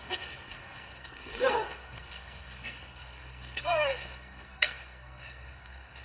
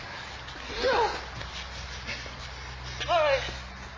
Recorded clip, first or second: second